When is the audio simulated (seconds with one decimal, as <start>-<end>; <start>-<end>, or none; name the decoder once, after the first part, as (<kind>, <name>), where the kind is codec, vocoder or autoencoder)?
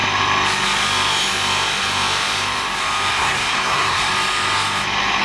3.1-4.1 (codec, SNAC)